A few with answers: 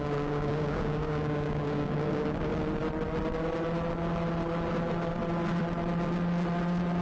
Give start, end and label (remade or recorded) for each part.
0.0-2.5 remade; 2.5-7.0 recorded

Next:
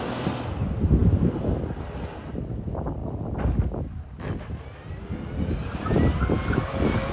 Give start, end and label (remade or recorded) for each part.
0.0-7.1 recorded

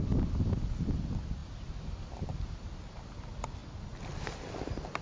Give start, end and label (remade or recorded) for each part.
0.0-5.0 recorded

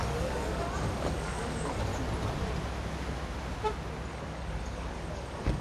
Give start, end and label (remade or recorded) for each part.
0.0-1.9 remade; 1.9-4.1 recorded; 4.1-5.6 remade

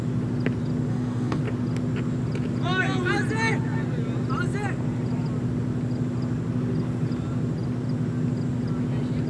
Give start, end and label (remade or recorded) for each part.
0.0-0.9 recorded; 0.9-1.4 remade; 1.4-9.3 recorded

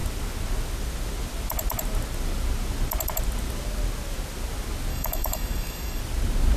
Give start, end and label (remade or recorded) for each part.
0.0-4.9 recorded; 4.9-6.0 remade; 6.0-6.6 recorded

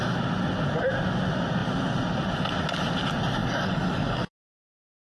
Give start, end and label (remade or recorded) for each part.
0.0-3.4 recorded; 3.4-4.3 remade; 4.3-5.0 recorded